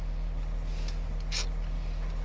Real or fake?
real